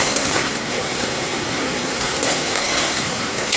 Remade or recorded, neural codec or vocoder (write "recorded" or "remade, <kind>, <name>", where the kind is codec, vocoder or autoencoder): remade, codec, SNAC